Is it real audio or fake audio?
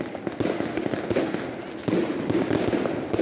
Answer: real